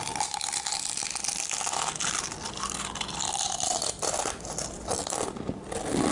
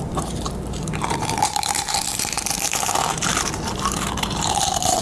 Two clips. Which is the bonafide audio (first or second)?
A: first